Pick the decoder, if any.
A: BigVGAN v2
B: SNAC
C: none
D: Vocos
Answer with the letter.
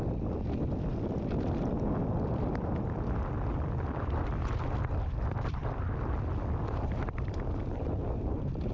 A